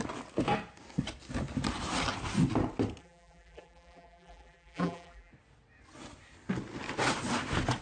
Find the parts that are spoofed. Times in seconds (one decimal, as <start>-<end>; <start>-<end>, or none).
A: 3.0-5.3